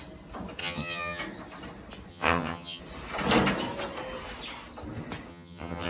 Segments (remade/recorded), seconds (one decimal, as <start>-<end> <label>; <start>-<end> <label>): 0.0-0.6 recorded; 0.6-1.2 remade; 1.2-2.1 recorded; 2.1-2.8 remade; 2.8-5.3 recorded; 5.3-5.9 remade